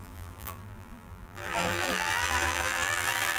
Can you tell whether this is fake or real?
fake